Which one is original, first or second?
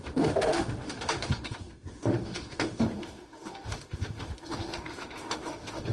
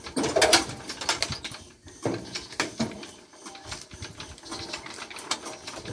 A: second